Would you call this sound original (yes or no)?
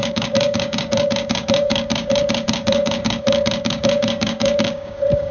no